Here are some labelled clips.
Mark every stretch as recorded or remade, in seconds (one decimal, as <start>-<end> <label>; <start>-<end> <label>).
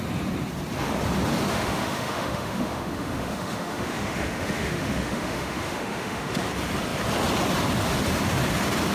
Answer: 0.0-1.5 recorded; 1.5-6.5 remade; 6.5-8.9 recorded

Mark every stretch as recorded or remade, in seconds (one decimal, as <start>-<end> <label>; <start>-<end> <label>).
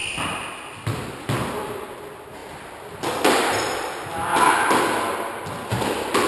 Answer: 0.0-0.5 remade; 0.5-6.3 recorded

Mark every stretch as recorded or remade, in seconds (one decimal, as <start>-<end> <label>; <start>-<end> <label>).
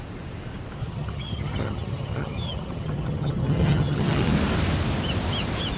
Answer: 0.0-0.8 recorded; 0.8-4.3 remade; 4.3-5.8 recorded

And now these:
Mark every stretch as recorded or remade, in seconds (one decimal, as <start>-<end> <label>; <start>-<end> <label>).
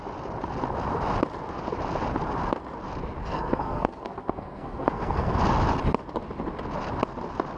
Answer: 0.0-3.2 recorded; 3.2-5.4 remade; 5.4-7.6 recorded